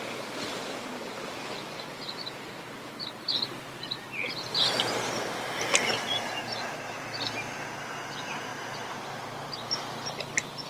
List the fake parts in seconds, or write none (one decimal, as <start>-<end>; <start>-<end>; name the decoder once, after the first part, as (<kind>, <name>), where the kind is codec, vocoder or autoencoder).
none